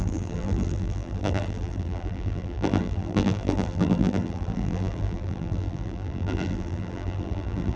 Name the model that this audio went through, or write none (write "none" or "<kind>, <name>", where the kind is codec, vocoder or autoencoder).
vocoder, BigVGAN v2